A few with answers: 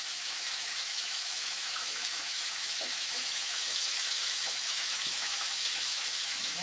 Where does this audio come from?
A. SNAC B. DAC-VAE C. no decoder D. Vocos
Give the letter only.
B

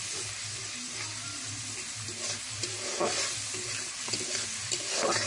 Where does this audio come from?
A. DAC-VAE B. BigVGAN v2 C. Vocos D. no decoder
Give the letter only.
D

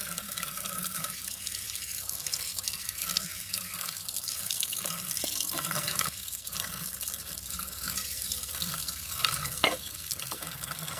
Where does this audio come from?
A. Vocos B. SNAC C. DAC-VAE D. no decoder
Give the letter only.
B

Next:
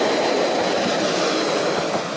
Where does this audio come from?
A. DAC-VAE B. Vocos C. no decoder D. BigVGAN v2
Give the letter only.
C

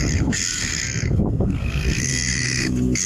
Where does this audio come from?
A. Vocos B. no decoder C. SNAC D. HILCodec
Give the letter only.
C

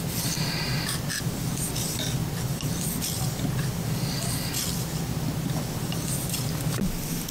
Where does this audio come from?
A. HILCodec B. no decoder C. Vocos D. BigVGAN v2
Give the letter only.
B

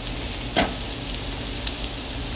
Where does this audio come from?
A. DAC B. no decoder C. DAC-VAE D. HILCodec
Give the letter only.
B